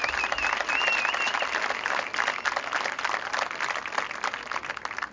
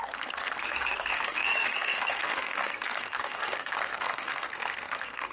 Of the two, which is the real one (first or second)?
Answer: first